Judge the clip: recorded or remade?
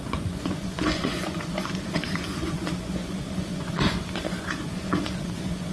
remade